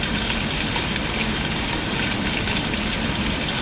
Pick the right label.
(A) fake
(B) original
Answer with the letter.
B